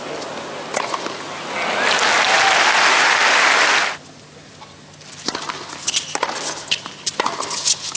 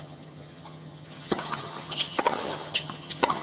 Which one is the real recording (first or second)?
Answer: first